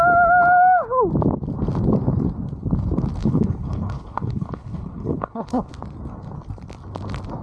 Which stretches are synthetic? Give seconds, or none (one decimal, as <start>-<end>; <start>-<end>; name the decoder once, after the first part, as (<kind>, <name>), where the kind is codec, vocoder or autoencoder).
3.2-5.7 (codec, HILCodec)